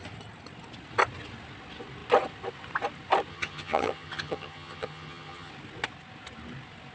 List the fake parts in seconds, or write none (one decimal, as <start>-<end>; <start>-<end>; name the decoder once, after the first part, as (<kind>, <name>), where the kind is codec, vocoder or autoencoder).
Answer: 3.3-5.5 (vocoder, HiFi-GAN)